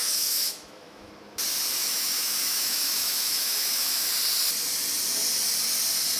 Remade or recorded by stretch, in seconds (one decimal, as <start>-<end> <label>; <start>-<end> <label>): 0.0-1.1 remade; 1.1-1.8 recorded; 1.8-4.1 remade; 4.1-6.2 recorded